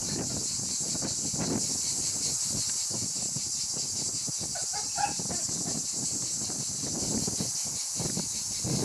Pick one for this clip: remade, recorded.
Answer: recorded